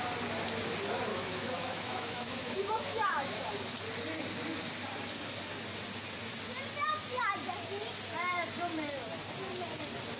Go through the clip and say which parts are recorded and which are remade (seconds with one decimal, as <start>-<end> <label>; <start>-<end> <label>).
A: 0.0-1.1 recorded; 1.1-3.5 remade; 3.5-10.2 recorded